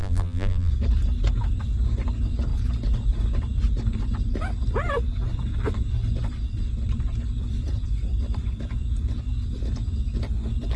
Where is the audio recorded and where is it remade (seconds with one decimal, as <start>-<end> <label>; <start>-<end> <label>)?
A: 0.0-0.7 remade; 0.7-10.8 recorded

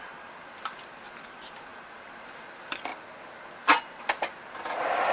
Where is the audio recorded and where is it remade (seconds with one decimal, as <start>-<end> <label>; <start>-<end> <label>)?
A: 0.0-2.9 remade; 2.9-3.8 recorded; 3.8-5.1 remade

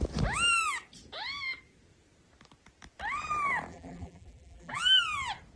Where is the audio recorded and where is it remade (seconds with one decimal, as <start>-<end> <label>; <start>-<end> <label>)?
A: 0.0-3.7 recorded; 3.7-5.0 remade; 5.0-5.6 recorded

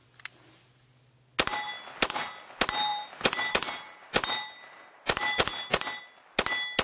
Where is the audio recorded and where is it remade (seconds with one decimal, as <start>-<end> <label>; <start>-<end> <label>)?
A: 0.0-2.9 recorded; 2.9-6.0 remade; 6.0-6.8 recorded

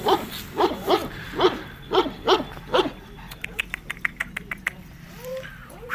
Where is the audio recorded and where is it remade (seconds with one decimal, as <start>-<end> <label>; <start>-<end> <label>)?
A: 0.0-1.0 remade; 1.0-3.4 recorded; 3.4-5.3 remade; 5.3-5.9 recorded

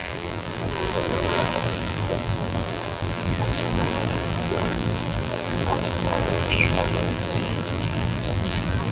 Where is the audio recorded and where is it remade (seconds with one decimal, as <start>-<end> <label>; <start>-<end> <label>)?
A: 0.0-8.9 remade

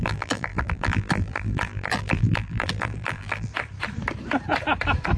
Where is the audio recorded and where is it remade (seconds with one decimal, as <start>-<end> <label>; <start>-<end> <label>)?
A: 0.0-3.5 remade; 3.5-5.2 recorded